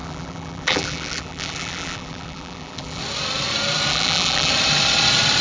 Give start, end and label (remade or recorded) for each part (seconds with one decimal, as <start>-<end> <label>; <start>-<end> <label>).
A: 0.0-3.0 remade; 3.0-3.9 recorded; 3.9-4.5 remade; 4.5-5.4 recorded